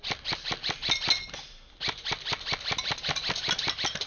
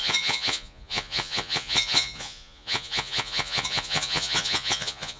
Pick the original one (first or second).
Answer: first